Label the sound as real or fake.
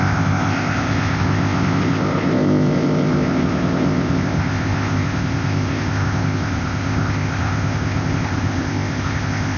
fake